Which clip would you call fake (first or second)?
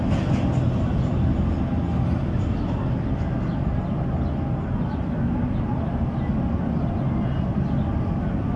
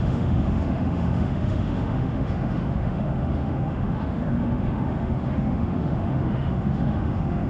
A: second